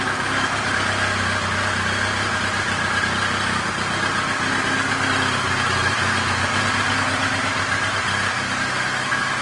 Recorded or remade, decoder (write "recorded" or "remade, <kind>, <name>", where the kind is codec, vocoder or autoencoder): recorded